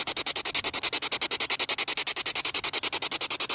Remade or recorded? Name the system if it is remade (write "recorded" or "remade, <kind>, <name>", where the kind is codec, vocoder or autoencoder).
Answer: recorded